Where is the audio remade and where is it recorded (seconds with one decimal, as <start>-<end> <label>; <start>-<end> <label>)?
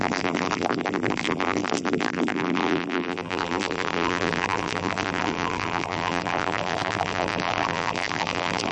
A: 0.0-8.7 remade